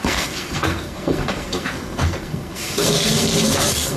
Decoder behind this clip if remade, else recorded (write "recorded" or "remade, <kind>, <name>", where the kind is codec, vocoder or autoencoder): remade, codec, SNAC